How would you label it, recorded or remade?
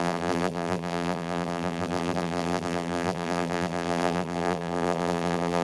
remade